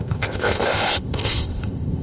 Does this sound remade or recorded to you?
remade